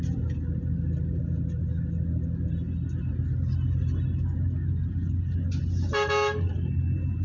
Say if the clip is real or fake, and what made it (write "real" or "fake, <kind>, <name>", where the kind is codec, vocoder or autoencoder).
real